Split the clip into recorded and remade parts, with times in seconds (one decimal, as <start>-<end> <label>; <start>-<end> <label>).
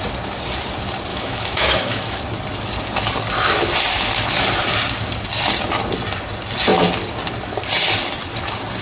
0.0-1.1 recorded; 1.1-2.2 remade; 2.2-8.8 recorded